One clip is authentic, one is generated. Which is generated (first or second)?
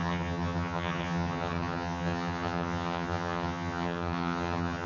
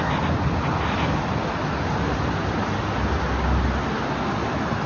first